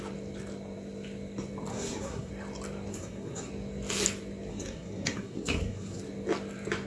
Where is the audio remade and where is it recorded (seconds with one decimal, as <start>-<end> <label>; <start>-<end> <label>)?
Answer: 0.0-1.7 recorded; 1.7-2.3 remade; 2.3-2.9 recorded; 2.9-3.5 remade; 3.5-4.5 recorded; 4.5-6.0 remade; 6.0-6.9 recorded